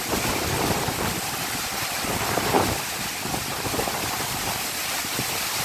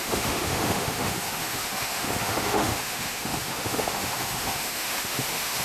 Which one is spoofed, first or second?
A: second